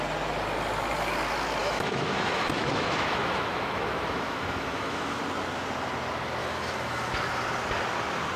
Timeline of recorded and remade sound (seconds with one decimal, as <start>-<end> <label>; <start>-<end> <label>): 0.0-1.6 recorded; 1.6-5.2 remade; 5.2-6.4 recorded; 6.4-7.1 remade; 7.1-8.4 recorded